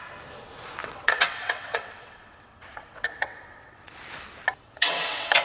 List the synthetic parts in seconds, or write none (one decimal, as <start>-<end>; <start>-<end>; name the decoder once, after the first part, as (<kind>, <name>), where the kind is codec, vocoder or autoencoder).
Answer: 0.8-4.0 (vocoder, WaveNeXt); 4.6-5.4